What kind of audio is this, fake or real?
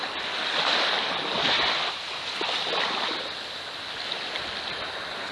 real